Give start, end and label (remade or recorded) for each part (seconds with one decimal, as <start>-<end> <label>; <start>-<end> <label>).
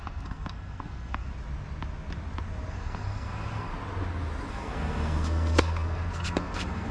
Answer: 0.0-1.3 remade; 1.3-2.7 recorded; 2.7-3.7 remade; 3.7-4.5 recorded; 4.5-6.9 remade